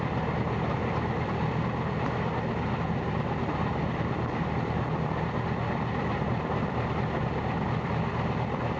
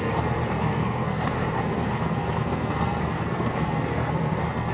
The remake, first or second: second